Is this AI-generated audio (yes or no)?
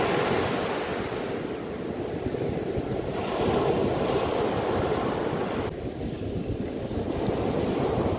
no